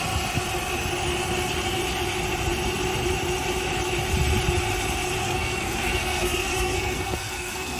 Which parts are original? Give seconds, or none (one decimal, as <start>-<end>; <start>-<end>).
0.0-5.2